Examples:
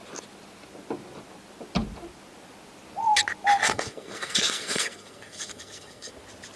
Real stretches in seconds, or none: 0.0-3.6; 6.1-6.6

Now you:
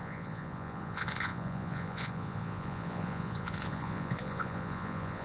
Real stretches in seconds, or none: none

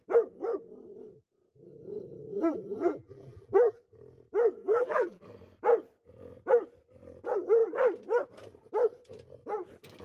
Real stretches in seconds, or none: 0.0-2.3; 3.8-4.6; 5.2-10.0

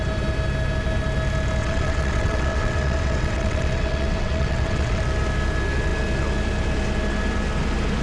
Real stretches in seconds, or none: 0.0-1.6; 5.0-8.0

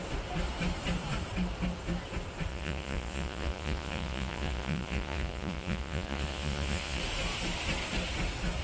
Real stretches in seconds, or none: 0.0-2.5; 7.0-8.6

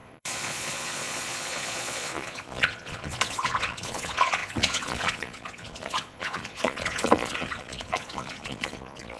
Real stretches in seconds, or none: none

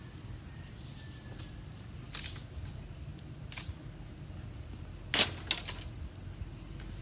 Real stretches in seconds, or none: 0.0-7.0